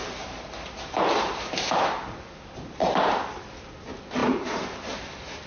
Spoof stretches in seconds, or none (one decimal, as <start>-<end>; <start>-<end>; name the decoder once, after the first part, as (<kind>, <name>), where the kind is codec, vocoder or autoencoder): 0.0-1.9 (vocoder, BigVGAN v2); 4.2-5.0